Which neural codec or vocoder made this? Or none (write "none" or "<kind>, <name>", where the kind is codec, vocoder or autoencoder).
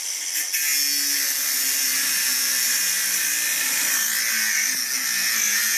none